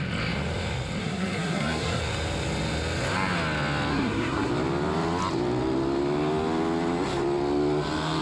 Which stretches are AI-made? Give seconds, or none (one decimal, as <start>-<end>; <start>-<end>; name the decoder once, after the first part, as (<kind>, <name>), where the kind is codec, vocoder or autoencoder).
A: 1.0-2.0 (codec, SNAC); 3.9-4.5